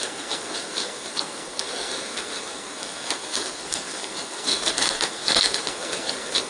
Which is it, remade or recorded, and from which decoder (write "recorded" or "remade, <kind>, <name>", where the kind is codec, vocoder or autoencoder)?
remade, codec, SNAC